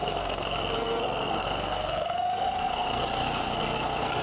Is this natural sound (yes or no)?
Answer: no